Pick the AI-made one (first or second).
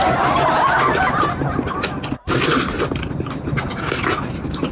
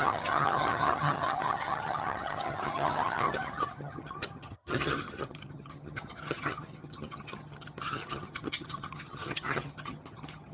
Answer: second